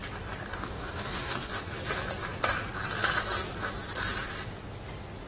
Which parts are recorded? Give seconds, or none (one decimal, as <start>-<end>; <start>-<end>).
0.0-0.5; 1.5-5.3